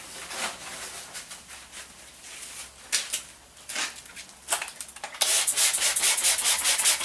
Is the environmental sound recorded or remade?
recorded